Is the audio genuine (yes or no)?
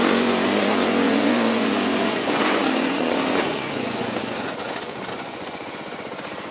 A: no